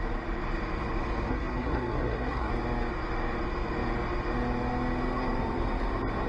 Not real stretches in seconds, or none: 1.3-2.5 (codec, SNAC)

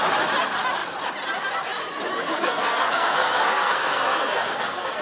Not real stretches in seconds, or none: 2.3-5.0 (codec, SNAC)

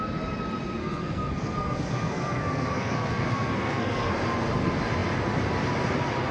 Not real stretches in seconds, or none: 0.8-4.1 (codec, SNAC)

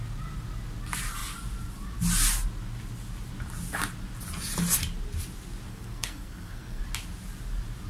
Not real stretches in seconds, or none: 5.7-6.8 (codec, SNAC)

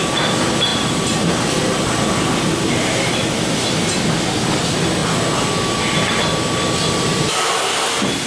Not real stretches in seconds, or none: none

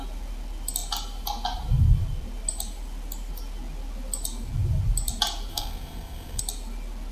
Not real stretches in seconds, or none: 5.5-6.4 (codec, SNAC)

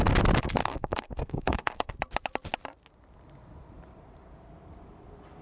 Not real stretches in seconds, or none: 0.6-1.9 (codec, SNAC)

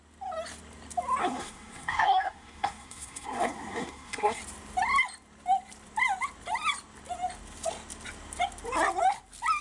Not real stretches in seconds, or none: 1.2-4.4 (codec, SNAC)